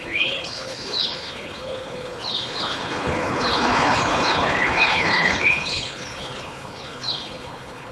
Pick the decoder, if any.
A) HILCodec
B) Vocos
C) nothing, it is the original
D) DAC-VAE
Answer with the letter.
A